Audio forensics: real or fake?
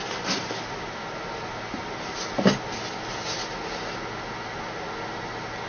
real